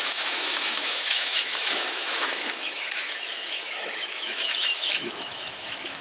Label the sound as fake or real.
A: fake